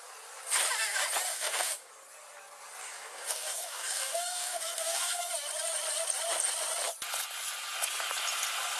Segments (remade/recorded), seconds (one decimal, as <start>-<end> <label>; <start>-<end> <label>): 0.0-1.3 recorded; 1.3-1.9 remade; 1.9-2.8 recorded; 2.8-5.2 remade; 5.2-8.8 recorded